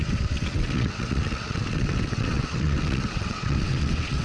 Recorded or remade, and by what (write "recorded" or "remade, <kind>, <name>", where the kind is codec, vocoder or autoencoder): remade, vocoder, WaveNeXt